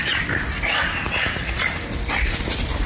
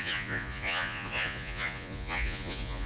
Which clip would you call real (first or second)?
first